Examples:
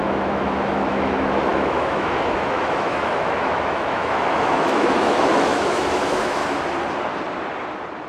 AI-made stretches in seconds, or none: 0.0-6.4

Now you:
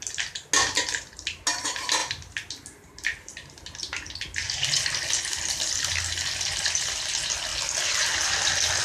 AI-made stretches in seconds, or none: none

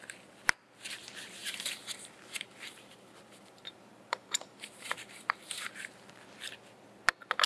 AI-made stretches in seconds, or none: 1.4-5.9

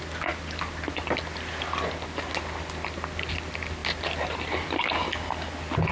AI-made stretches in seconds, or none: none